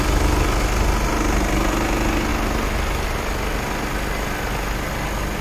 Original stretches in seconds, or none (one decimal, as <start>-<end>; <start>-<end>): 0.0-5.4